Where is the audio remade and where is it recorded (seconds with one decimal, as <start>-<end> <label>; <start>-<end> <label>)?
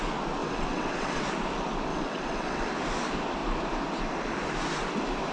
0.0-0.4 recorded; 0.4-1.2 remade; 1.2-1.9 recorded; 1.9-2.7 remade; 2.7-5.3 recorded